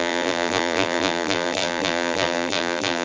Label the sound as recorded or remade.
remade